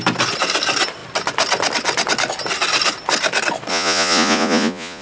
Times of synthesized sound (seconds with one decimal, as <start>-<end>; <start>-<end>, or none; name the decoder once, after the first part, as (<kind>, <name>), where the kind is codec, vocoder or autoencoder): 3.7-5.0 (vocoder, Vocos)